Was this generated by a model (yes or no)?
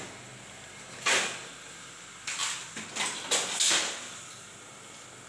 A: no